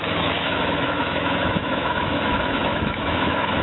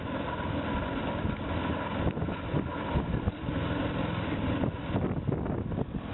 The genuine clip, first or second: second